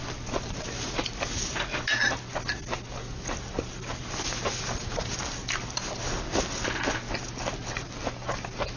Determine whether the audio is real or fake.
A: real